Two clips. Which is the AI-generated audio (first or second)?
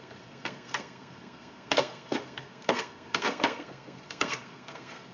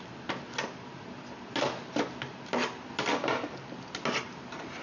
first